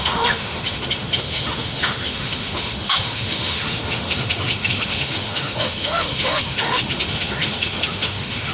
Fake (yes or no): yes